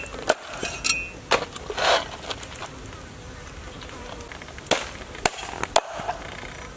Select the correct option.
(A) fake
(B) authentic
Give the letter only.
B